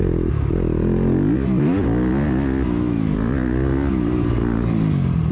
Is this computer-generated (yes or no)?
no